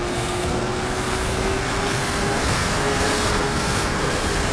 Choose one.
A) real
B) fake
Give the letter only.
B